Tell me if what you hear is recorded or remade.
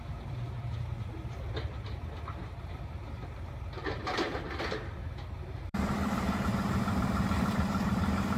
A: remade